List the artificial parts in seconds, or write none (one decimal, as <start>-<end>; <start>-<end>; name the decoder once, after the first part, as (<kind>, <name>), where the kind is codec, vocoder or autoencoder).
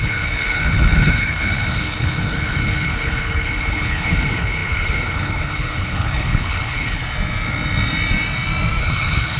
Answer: 0.0-7.0 (codec, HILCodec); 8.8-9.4